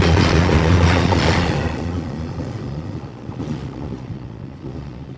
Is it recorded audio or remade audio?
remade